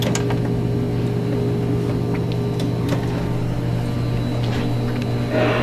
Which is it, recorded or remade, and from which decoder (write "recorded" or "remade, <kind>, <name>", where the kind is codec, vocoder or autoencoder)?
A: recorded